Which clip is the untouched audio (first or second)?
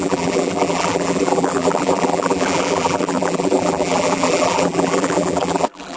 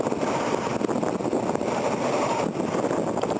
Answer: second